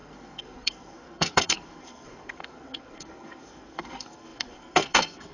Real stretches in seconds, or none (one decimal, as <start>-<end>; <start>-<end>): none